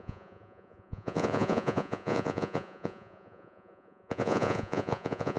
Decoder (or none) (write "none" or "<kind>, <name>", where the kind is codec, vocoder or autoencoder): vocoder, Vocos